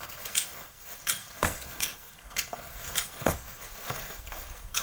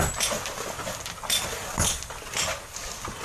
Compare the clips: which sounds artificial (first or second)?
first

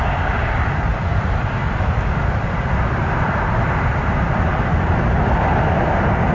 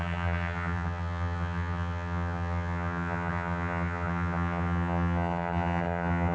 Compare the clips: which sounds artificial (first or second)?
second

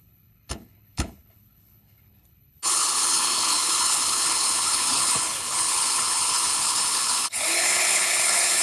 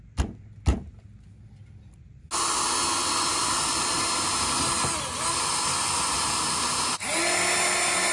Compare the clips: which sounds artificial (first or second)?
first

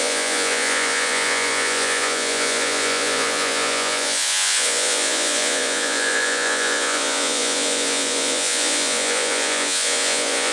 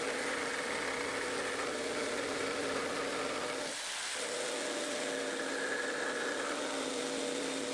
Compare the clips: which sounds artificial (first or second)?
first